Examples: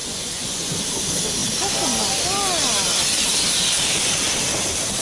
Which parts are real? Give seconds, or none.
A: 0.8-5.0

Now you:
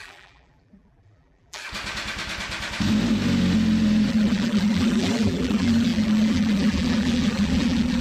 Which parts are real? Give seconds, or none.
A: 1.6-4.1

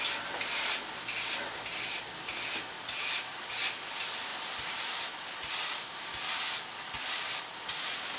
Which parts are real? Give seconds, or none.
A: 0.0-8.2

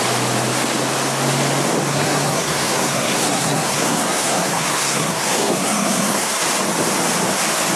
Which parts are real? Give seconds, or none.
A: 0.0-1.9; 6.4-7.8

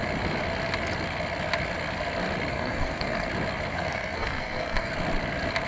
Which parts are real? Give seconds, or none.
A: 0.0-2.5; 3.3-3.7; 4.9-5.7

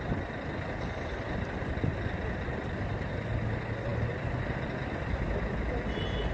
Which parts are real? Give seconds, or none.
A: 0.0-6.3